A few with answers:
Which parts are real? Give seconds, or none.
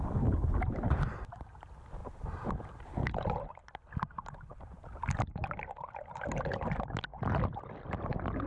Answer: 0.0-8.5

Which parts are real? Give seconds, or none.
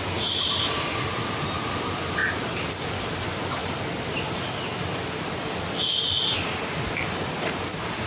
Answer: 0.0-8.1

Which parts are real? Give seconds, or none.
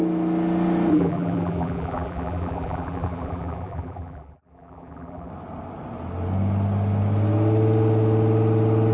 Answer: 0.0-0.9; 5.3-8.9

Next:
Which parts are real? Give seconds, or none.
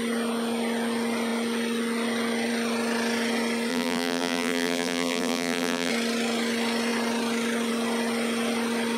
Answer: 0.0-3.7; 5.9-9.0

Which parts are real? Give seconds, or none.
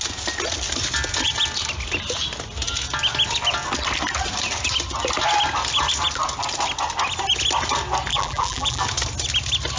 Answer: 0.0-8.1; 8.8-9.8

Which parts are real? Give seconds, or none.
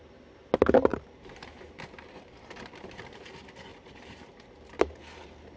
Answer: 0.0-0.9; 3.1-3.7; 5.0-5.6